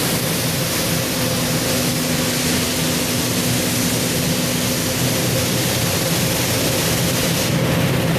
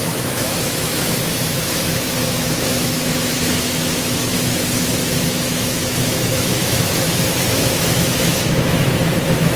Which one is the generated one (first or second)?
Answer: second